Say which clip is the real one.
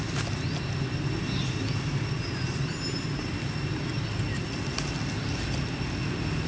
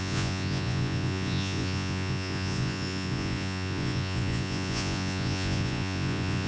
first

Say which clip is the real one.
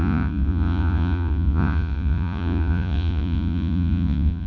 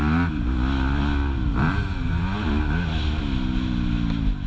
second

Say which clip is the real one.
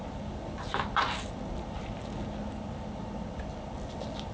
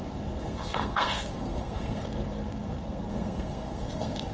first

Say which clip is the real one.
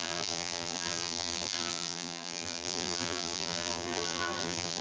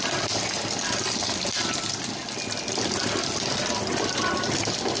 second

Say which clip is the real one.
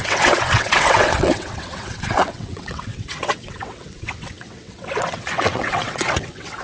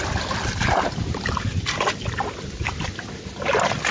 second